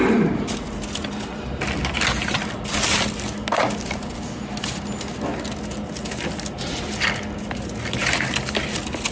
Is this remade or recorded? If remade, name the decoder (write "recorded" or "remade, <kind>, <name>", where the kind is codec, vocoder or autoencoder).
recorded